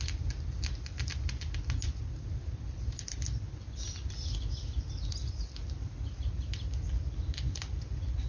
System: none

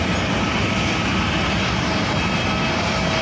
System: none